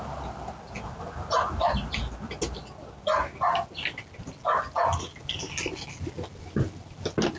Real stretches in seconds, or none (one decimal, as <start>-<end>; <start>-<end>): 0.0-7.4